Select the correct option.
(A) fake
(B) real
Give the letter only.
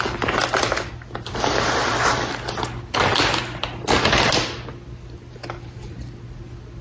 B